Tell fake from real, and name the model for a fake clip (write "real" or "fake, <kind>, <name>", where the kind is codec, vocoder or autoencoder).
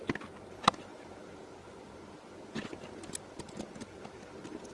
real